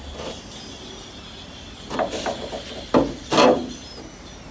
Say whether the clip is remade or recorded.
recorded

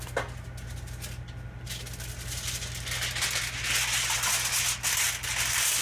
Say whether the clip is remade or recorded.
recorded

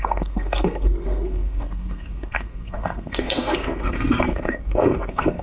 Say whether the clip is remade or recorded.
remade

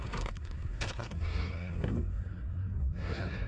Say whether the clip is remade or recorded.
remade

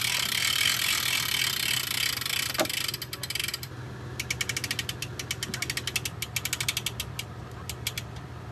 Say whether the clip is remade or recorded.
recorded